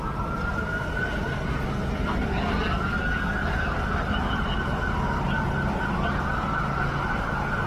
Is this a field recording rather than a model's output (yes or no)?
yes